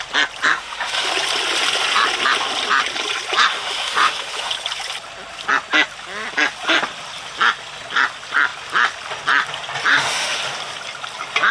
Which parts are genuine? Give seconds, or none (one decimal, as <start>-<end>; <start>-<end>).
0.0-0.5; 1.1-3.5; 4.5-9.9; 10.4-11.5